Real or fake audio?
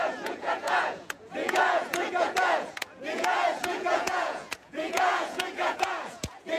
fake